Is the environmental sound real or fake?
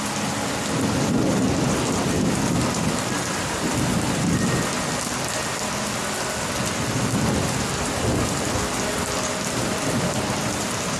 real